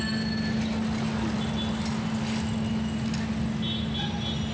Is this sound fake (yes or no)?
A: no